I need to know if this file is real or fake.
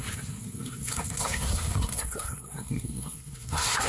fake